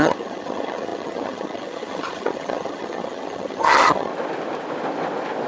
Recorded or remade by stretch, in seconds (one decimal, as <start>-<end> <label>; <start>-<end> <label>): 0.0-4.1 remade; 4.1-5.5 recorded